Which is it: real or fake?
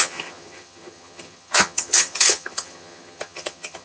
fake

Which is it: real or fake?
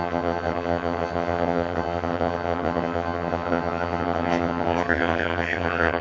fake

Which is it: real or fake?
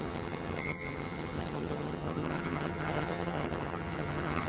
fake